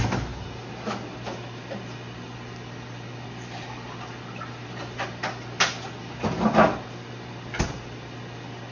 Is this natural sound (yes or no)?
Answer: yes